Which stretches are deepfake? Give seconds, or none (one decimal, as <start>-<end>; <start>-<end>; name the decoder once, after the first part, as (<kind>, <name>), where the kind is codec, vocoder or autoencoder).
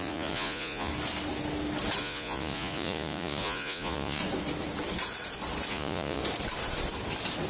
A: 0.0-0.9 (vocoder, Vocos); 2.0-4.2; 5.7-6.2